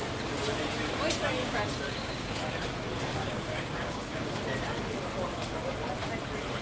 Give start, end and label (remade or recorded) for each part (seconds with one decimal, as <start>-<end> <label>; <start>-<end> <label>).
0.0-1.4 recorded; 1.4-2.3 remade; 2.3-3.2 recorded; 3.2-4.4 remade; 4.4-6.6 recorded